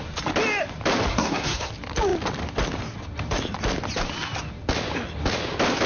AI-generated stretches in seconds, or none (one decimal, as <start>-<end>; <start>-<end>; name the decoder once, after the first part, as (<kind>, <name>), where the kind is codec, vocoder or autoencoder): 1.1-1.7 (codec, SNAC)